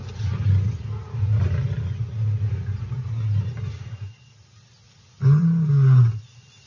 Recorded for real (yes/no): yes